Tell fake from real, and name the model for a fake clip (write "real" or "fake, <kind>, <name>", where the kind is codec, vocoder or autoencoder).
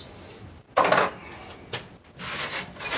real